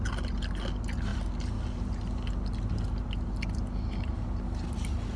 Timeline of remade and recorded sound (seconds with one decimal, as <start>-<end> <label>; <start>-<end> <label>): 0.0-5.2 recorded